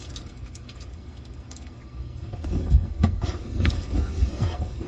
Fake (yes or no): yes